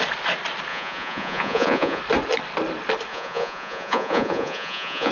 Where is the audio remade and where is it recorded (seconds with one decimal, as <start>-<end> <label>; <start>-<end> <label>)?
0.0-0.7 recorded; 0.7-2.0 remade; 2.0-3.1 recorded; 3.1-5.1 remade